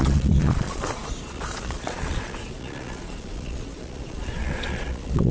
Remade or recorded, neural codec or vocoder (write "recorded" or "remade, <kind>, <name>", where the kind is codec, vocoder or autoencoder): remade, vocoder, Vocos